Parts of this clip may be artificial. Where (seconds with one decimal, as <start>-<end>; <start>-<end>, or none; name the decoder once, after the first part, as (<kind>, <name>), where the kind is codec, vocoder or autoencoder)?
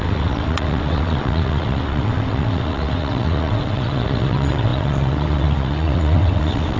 0.0-6.8 (vocoder, WaveNeXt)